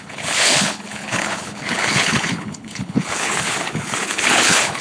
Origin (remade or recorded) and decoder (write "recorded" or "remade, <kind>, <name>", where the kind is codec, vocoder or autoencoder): remade, codec, HILCodec